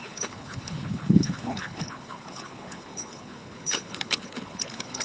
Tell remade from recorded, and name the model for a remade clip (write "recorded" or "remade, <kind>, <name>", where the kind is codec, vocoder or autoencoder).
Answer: remade, codec, HILCodec